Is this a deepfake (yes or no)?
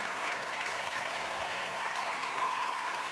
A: yes